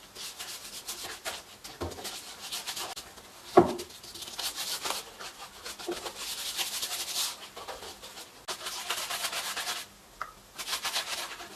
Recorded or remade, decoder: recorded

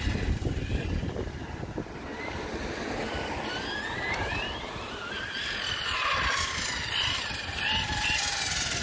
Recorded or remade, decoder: recorded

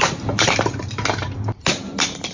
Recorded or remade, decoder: remade, vocoder, BigVGAN v2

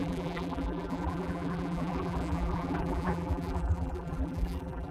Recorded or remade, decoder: remade, vocoder, BigVGAN v2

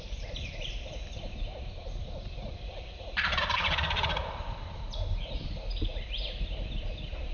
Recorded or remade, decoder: remade, vocoder, BigVGAN v2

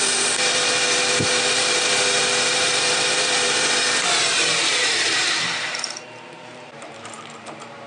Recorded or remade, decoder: remade, vocoder, BigVGAN v2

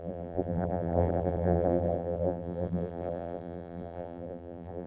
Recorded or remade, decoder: remade, vocoder, BigVGAN v2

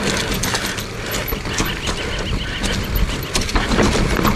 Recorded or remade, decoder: recorded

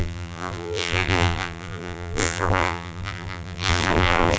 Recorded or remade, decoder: remade, vocoder, BigVGAN v2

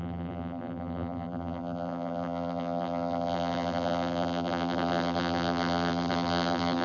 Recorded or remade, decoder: remade, vocoder, BigVGAN v2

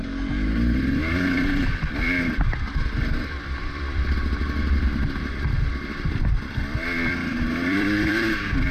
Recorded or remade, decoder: remade, vocoder, BigVGAN v2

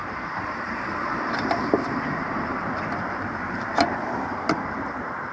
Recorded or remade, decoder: remade, vocoder, BigVGAN v2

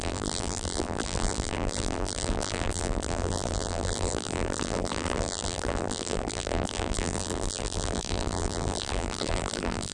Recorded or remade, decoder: remade, vocoder, BigVGAN v2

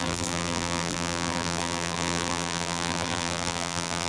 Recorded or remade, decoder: remade, vocoder, BigVGAN v2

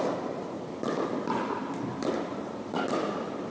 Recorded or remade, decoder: remade, vocoder, BigVGAN v2